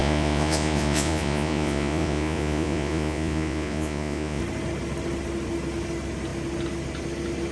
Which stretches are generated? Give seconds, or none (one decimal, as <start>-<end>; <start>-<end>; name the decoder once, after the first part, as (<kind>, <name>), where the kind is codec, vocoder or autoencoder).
0.0-4.4 (vocoder, Vocos)